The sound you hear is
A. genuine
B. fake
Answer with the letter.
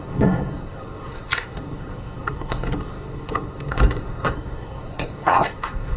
B